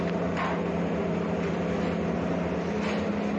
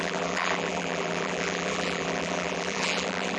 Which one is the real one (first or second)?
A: first